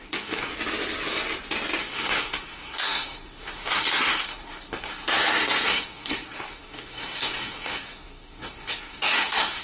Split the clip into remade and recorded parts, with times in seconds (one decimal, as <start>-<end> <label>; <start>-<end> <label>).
0.0-0.5 remade; 0.5-1.8 recorded; 1.8-9.6 remade